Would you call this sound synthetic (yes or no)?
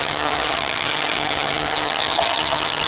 yes